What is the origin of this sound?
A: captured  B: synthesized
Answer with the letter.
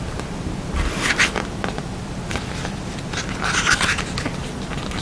A